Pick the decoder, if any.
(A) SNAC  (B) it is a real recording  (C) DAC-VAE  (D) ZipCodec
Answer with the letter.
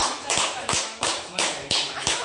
C